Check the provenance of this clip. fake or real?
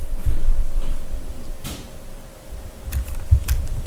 fake